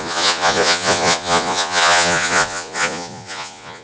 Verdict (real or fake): fake